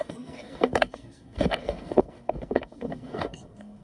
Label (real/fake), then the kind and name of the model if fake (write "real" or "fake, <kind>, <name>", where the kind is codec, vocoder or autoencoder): fake, codec, SNAC